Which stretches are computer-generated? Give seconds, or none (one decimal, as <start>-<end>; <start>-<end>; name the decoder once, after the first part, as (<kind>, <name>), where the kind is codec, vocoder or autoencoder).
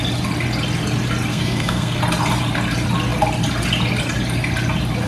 1.3-2.0 (codec, SNAC)